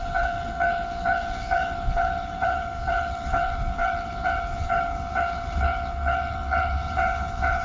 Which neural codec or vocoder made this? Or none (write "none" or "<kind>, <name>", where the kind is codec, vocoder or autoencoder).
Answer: codec, HILCodec